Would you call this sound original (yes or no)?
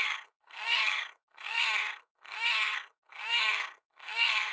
no